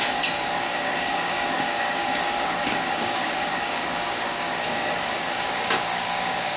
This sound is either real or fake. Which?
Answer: fake